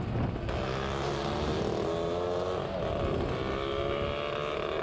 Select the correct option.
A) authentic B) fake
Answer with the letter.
A